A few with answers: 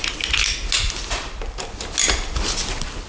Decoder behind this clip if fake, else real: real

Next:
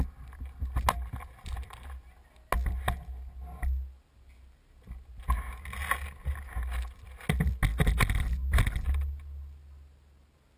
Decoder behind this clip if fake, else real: real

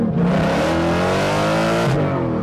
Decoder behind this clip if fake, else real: real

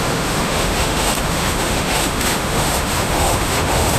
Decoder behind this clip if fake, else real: fake, autoencoder, DAC-VAE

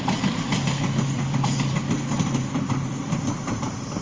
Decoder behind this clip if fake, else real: fake, vocoder, BigVGAN v2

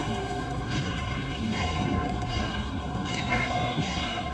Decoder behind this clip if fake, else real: fake, codec, SNAC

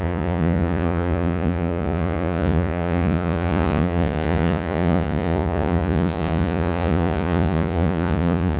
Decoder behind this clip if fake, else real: fake, vocoder, Vocos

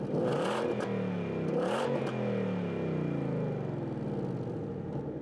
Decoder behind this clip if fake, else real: real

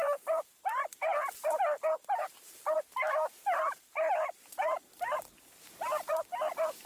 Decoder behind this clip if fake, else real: fake, vocoder, BigVGAN v2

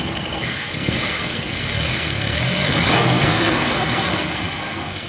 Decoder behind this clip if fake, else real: fake, codec, SNAC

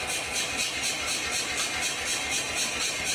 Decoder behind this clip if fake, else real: real